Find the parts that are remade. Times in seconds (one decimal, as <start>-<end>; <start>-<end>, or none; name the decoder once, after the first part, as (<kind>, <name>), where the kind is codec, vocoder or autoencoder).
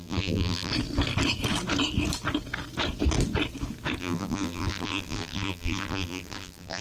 0.0-0.7 (vocoder, BigVGAN v2); 4.0-6.8